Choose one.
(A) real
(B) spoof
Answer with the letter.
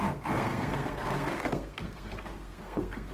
B